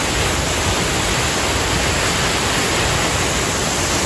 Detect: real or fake real